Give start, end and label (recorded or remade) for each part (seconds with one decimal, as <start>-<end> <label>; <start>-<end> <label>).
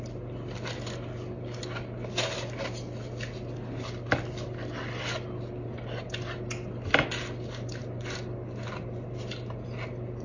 0.0-10.2 recorded